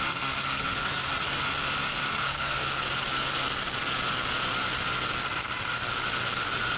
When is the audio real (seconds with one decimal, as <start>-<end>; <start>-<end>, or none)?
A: 1.1-2.1; 2.6-6.8